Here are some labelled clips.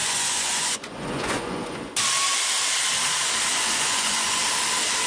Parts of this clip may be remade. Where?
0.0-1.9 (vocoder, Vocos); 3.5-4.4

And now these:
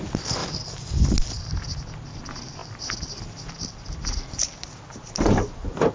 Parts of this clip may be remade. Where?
0.4-1.3 (vocoder, BigVGAN v2)